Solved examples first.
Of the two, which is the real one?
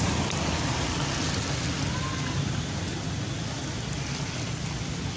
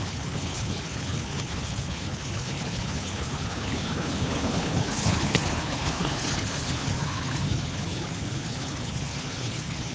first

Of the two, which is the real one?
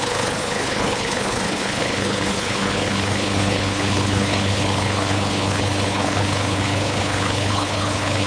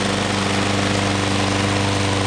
second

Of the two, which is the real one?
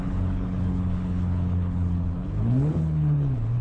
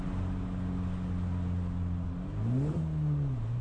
second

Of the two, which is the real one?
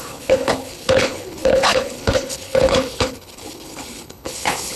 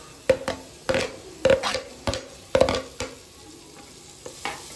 second